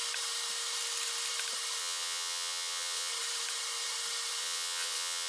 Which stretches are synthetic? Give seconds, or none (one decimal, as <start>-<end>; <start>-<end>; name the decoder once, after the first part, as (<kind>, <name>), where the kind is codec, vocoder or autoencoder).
1.8-3.1 (vocoder, WaveNeXt); 4.4-5.3